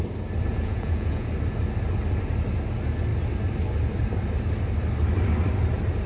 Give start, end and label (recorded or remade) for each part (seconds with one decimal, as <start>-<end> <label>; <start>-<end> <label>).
0.0-0.5 recorded; 0.5-1.3 remade; 1.3-6.1 recorded